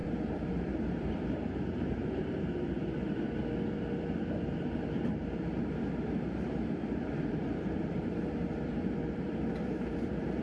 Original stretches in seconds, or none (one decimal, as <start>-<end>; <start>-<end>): 3.4-4.4